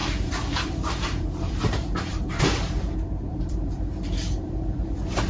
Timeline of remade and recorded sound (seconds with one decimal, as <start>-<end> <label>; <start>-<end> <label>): 0.0-2.4 remade; 2.4-3.3 recorded; 3.3-4.7 remade; 4.7-5.3 recorded

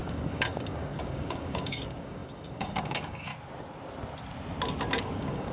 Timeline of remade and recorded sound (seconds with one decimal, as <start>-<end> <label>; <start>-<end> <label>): 0.0-3.3 remade; 3.3-5.0 recorded; 5.0-5.5 remade

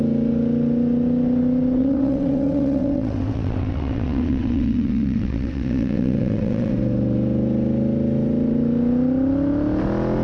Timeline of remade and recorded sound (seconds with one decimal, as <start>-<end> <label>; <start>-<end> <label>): 0.0-1.8 recorded; 1.8-6.7 remade; 6.7-10.2 recorded

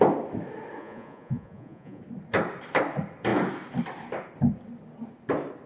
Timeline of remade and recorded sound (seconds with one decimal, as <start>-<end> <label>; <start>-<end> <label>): 0.0-0.8 recorded; 0.8-2.0 remade; 2.0-5.7 recorded